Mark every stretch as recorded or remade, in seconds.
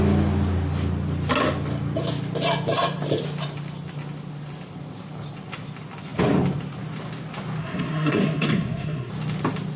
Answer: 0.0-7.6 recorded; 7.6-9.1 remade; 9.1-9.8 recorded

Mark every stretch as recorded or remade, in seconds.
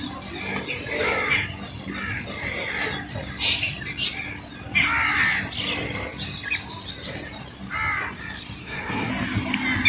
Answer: 0.0-8.6 recorded; 8.6-9.1 remade; 9.1-9.9 recorded